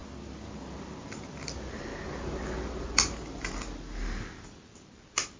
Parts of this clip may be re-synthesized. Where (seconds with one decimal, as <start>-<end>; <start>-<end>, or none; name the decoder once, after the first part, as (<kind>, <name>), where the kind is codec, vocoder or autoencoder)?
none